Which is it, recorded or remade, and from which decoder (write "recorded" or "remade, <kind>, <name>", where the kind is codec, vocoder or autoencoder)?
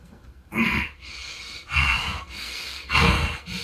remade, codec, SNAC